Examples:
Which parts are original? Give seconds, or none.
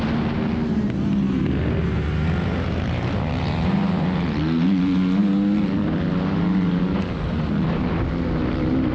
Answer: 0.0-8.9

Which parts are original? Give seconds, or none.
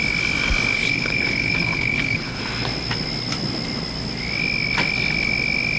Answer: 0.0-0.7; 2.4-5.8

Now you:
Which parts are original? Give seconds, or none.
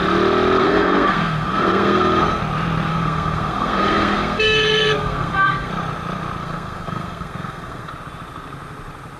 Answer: 0.0-0.6; 2.4-2.9; 5.7-6.4; 7.9-9.2